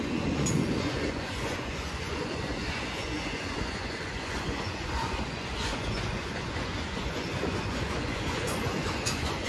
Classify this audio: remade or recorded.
remade